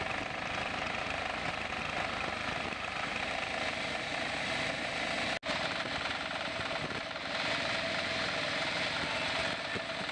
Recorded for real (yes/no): yes